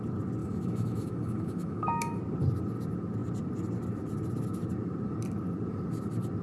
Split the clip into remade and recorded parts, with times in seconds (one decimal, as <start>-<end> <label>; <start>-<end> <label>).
0.0-0.4 recorded; 0.4-2.2 remade; 2.2-6.4 recorded